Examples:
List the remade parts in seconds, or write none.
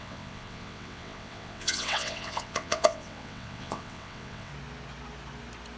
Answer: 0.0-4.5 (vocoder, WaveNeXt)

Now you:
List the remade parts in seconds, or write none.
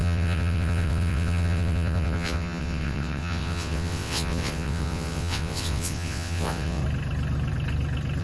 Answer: 0.0-6.8 (vocoder, WaveNeXt)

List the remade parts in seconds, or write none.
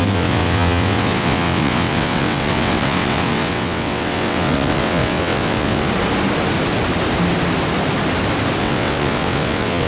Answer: 0.0-5.9 (vocoder, WaveNeXt); 8.6-9.9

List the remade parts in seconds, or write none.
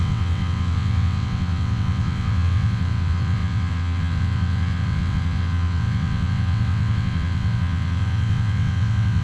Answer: 0.0-9.2 (vocoder, WaveNeXt)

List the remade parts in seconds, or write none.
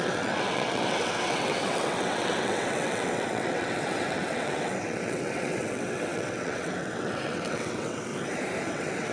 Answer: 0.0-8.1 (vocoder, WaveNeXt); 8.7-9.1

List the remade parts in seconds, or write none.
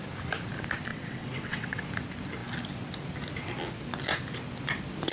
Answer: 0.9-1.8 (vocoder, WaveNeXt)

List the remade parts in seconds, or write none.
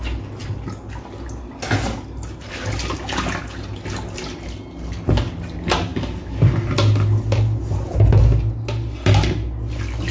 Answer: none